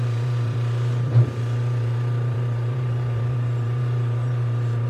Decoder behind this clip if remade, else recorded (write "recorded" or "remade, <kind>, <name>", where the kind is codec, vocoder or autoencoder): remade, vocoder, BigVGAN v2